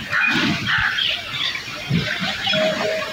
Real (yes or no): no